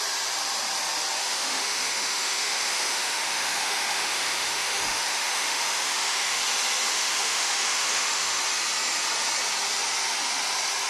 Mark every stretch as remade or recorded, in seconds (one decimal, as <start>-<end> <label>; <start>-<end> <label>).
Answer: 0.0-1.2 recorded; 1.2-6.4 remade; 6.4-6.9 recorded; 6.9-8.4 remade; 8.4-10.9 recorded